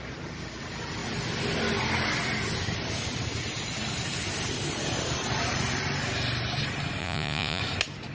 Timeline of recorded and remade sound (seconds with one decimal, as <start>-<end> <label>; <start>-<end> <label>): 0.0-7.0 recorded; 7.0-7.6 remade; 7.6-8.1 recorded